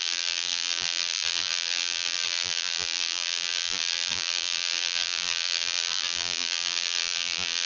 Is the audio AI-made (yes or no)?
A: yes